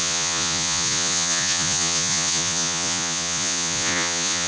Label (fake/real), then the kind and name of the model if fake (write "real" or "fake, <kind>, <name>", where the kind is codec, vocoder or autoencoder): fake, vocoder, Vocos